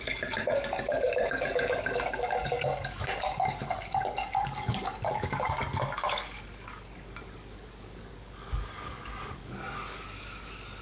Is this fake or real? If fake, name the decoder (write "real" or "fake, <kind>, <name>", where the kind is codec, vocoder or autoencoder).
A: fake, codec, DAC